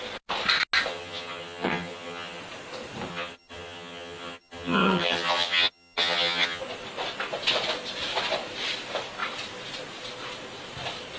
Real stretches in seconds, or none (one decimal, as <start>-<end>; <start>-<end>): 0.0-0.9; 2.4-3.1; 6.6-11.2